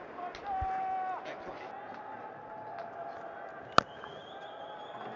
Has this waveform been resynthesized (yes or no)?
no